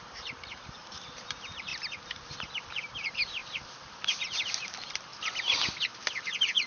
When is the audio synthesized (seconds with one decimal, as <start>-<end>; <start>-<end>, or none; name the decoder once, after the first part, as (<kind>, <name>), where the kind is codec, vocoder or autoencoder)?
0.0-5.1 (vocoder, BigVGAN v2); 6.2-6.7